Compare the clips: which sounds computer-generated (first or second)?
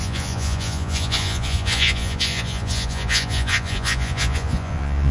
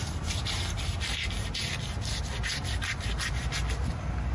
first